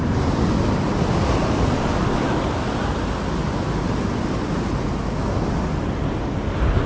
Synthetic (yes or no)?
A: no